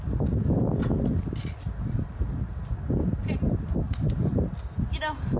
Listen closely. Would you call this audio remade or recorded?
recorded